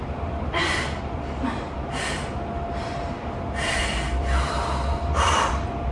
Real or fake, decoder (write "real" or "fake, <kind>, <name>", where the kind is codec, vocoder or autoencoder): fake, vocoder, BigVGAN v2